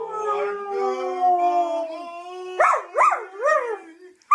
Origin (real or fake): real